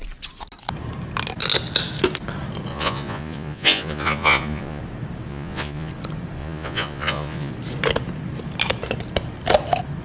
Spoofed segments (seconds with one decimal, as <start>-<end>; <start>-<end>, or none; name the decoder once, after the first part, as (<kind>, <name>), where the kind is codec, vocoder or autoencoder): 2.7-4.8 (vocoder, Vocos); 5.3-5.9; 6.4-7.5